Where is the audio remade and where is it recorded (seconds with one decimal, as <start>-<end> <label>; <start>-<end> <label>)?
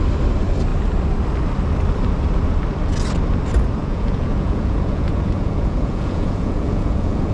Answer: 0.0-3.8 recorded; 3.8-7.3 remade